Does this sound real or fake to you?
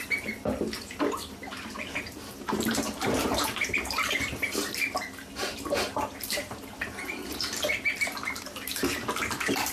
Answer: fake